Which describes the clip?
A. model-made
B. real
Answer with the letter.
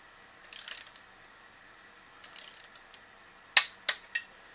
B